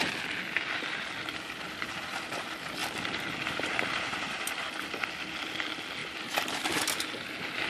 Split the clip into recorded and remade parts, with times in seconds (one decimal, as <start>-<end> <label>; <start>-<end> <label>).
0.0-2.8 recorded; 2.8-4.6 remade; 4.6-6.0 recorded; 6.0-6.8 remade; 6.8-7.7 recorded